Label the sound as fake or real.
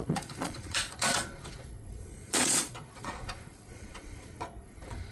fake